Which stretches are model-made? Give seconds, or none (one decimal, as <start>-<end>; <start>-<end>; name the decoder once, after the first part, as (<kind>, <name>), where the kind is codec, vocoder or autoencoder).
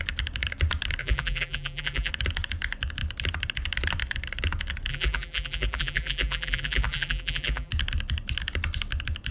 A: 1.0-2.1 (vocoder, BigVGAN v2); 4.9-7.7